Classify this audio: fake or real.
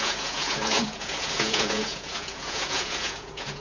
fake